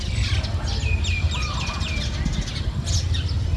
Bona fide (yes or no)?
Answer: yes